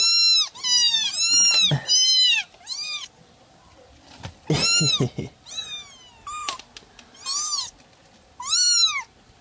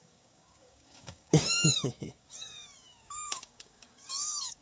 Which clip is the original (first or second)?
first